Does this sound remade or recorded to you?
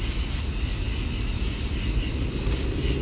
recorded